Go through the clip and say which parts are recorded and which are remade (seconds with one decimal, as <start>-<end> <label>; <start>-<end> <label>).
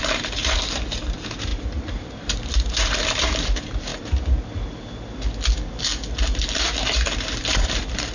0.0-3.9 remade; 3.9-7.4 recorded; 7.4-8.1 remade